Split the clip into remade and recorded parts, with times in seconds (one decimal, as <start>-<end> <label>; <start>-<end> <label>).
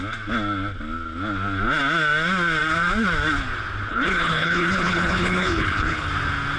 0.0-3.9 recorded; 3.9-6.1 remade; 6.1-6.6 recorded